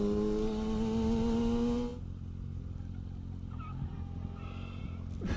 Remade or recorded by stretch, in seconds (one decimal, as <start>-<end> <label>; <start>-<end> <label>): 0.0-5.4 recorded